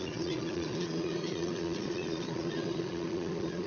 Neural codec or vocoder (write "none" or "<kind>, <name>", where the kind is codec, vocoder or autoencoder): vocoder, Vocos